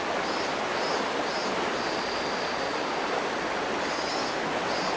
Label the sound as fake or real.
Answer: real